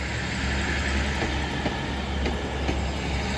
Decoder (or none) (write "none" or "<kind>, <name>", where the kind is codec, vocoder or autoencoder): none